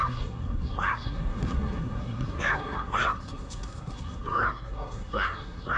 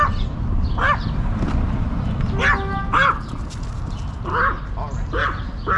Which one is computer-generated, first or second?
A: first